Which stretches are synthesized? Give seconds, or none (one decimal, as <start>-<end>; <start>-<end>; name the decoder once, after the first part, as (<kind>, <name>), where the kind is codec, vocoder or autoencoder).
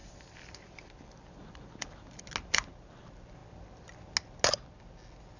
0.0-2.2 (vocoder, BigVGAN v2)